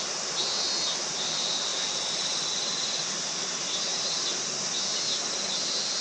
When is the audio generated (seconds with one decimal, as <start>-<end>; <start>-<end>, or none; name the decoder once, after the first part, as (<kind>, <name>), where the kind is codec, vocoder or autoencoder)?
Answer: none